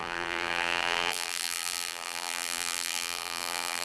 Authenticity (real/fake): fake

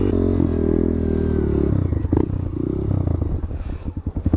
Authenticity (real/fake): real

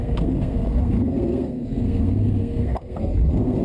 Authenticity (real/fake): fake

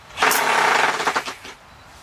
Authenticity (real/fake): real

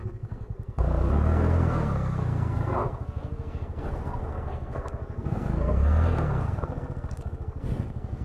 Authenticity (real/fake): fake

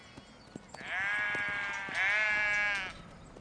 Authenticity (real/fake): real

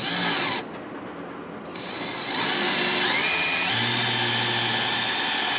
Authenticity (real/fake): real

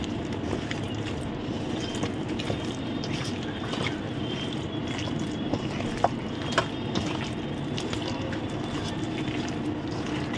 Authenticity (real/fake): real